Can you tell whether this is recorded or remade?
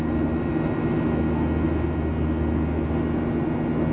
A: recorded